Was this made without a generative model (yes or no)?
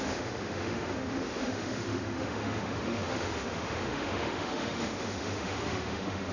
no